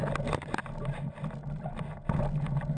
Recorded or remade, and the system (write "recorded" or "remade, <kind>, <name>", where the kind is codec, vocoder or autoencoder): recorded